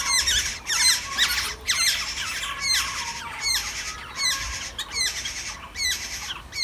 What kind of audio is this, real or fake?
real